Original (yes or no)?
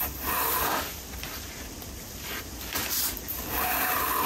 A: no